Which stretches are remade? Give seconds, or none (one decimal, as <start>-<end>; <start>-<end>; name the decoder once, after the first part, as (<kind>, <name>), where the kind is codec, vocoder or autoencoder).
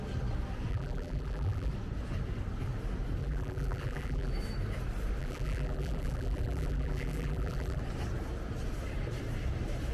0.7-1.7 (vocoder, BigVGAN v2); 3.2-4.3; 5.2-7.8